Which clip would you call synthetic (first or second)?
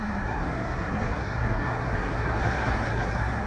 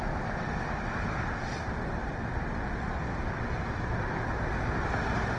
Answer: first